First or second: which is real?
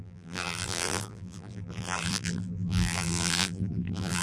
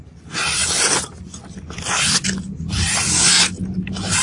second